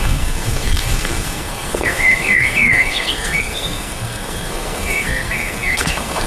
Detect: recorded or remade remade